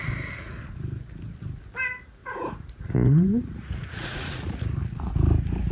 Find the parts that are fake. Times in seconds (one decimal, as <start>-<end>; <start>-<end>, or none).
2.2-5.1